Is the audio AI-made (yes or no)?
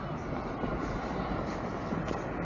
no